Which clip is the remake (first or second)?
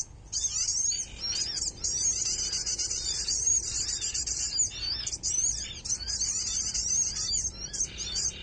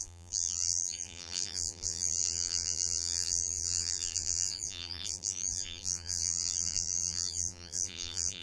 second